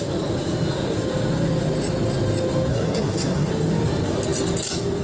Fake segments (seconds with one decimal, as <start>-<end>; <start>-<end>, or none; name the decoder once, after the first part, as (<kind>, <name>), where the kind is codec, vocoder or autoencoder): 2.7-3.5 (codec, SNAC)